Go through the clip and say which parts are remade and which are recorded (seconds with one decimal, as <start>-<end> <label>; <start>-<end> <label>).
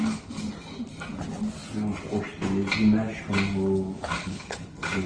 0.0-4.2 recorded; 4.2-5.1 remade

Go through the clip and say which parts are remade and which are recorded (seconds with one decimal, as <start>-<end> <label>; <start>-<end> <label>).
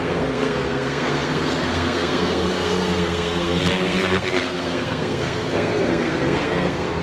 0.0-7.0 remade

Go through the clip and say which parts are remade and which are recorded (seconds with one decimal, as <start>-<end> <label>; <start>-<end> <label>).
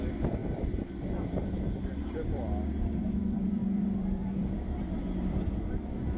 0.0-6.2 remade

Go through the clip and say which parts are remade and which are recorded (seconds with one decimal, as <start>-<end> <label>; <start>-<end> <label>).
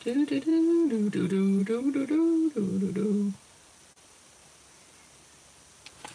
0.0-2.7 recorded; 2.7-3.3 remade; 3.3-6.1 recorded